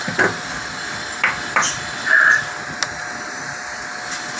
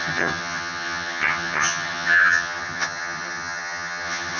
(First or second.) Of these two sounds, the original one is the first